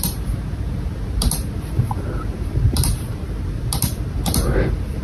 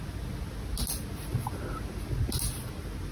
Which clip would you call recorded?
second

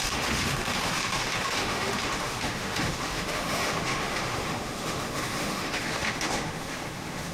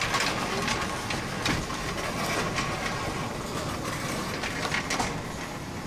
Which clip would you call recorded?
second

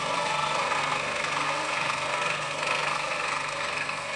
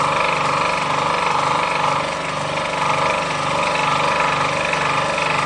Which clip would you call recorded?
second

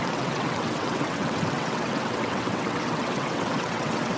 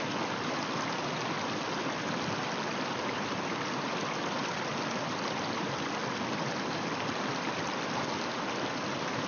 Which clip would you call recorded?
second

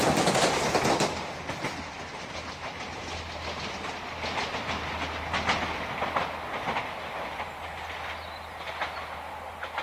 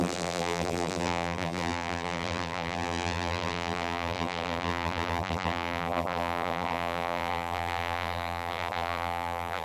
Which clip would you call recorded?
first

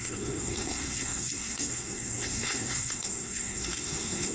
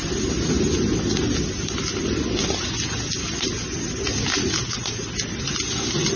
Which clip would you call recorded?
second